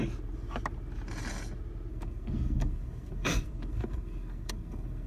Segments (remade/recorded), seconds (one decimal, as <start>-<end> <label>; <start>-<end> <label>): 0.0-1.9 recorded; 1.9-5.1 remade